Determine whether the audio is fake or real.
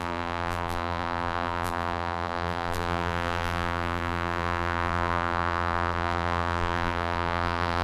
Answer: fake